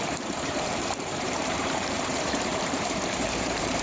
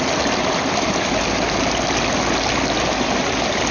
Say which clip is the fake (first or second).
first